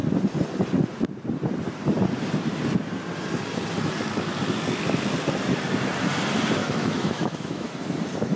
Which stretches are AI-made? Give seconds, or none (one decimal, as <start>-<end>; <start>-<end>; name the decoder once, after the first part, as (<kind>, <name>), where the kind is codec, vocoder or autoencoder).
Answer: 6.6-7.7 (autoencoder, DAC-VAE)